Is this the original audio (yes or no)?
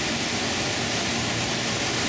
yes